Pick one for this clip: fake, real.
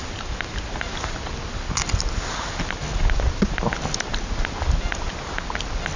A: real